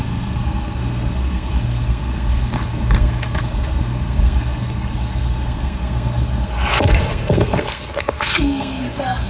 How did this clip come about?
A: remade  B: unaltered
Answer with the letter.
A